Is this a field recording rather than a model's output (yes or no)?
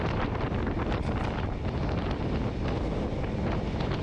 yes